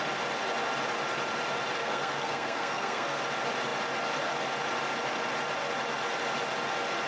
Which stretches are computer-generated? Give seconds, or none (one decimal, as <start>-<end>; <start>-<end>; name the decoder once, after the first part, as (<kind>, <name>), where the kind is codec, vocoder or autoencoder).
1.8-3.2 (codec, SNAC)